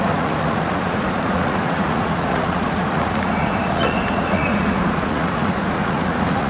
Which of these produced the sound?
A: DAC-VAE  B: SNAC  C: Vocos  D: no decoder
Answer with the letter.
C